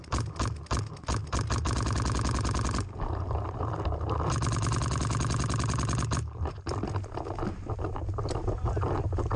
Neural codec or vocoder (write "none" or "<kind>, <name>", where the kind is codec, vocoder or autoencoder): none